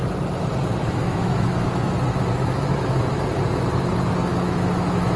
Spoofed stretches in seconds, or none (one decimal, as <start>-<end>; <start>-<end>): 0.8-1.8; 2.4-3.2; 4.3-5.2